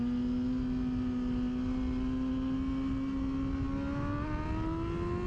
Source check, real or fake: real